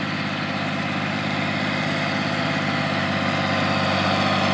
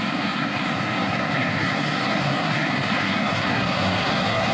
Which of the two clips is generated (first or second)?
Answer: second